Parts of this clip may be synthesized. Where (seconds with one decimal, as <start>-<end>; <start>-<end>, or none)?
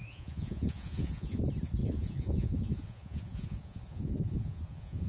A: 0.0-1.4; 1.8-5.1